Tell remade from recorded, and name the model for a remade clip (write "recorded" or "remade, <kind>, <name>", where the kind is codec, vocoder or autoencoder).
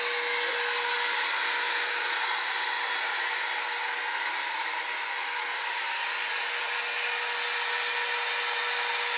recorded